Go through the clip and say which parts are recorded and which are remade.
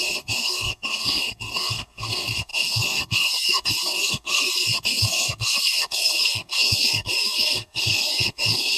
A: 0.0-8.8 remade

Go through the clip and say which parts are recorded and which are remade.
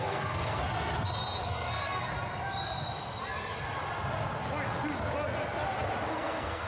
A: 0.0-0.6 remade; 0.6-1.4 recorded; 1.4-2.1 remade; 2.1-6.1 recorded; 6.1-6.7 remade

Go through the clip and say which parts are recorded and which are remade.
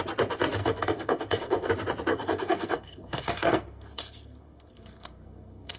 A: 0.0-0.6 recorded; 0.6-1.7 remade; 1.7-2.1 recorded; 2.1-5.8 remade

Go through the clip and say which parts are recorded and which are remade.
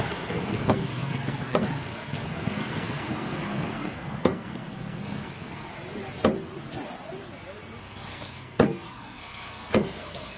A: 0.0-5.7 remade; 5.7-7.8 recorded; 7.8-10.4 remade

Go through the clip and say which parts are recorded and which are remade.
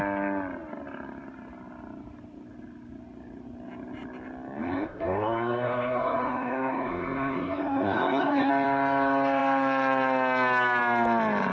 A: 0.0-4.6 recorded; 4.6-8.5 remade; 8.5-11.5 recorded